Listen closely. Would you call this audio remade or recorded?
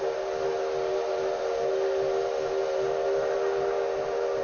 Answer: recorded